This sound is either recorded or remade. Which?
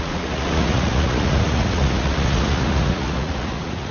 remade